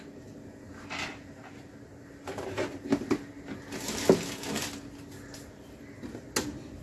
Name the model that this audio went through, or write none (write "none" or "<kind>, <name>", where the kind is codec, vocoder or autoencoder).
none